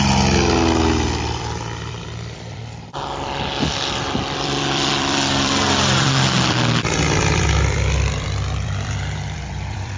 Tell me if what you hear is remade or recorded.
remade